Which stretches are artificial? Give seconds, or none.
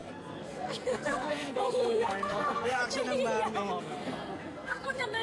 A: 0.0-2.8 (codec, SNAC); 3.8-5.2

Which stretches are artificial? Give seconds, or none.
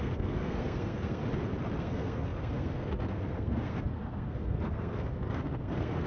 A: 0.0-1.2 (codec, SNAC); 1.8-6.1